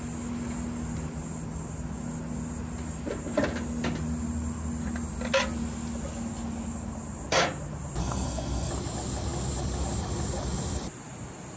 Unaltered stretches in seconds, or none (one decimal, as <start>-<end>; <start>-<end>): 0.0-8.0; 8.7-11.6